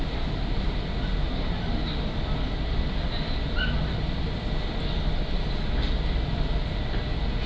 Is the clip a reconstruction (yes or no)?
no